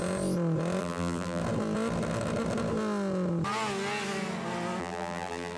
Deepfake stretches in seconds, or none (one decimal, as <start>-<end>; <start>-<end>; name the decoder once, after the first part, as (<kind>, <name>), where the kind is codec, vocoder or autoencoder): 0.8-1.4 (vocoder, BigVGAN v2); 4.8-5.6